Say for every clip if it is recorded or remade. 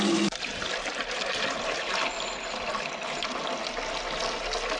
recorded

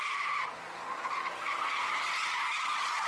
recorded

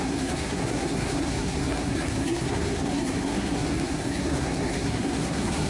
remade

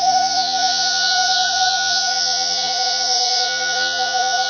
remade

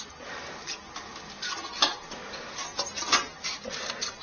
recorded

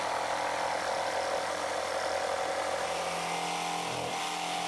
recorded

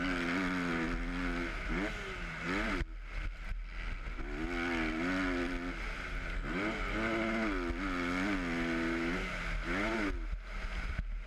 recorded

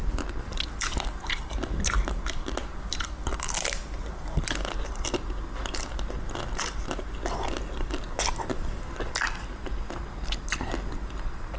recorded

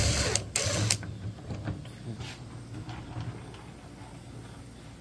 recorded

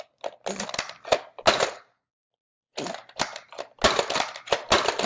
recorded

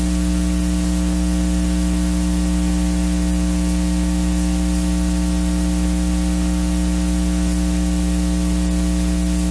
recorded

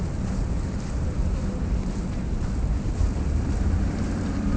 recorded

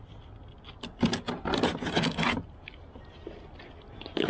recorded